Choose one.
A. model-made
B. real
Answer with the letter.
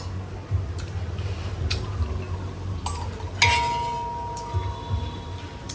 B